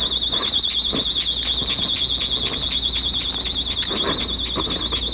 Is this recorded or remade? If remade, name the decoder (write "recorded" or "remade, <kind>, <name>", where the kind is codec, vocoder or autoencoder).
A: recorded